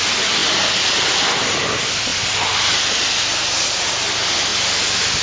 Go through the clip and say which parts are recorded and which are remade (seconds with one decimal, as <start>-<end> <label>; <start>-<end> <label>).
0.0-5.2 recorded